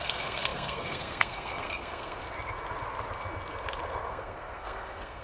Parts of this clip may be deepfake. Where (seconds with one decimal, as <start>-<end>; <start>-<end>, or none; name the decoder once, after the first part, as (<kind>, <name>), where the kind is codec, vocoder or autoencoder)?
0.0-2.2 (codec, SNAC); 4.1-5.2